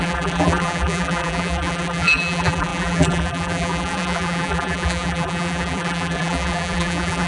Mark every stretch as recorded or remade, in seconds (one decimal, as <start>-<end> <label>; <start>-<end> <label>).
0.0-7.3 remade